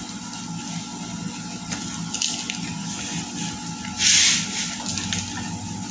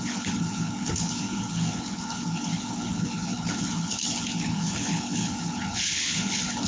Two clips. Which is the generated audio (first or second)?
second